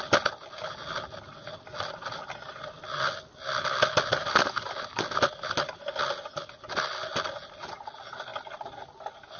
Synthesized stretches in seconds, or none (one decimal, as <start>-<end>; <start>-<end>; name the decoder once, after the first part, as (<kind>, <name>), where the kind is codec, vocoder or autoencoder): none